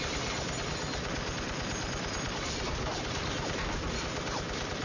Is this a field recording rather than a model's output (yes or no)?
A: yes